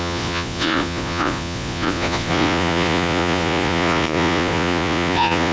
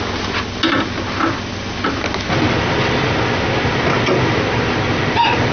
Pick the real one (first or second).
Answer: second